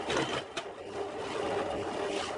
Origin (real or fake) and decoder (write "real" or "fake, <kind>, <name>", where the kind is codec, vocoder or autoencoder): real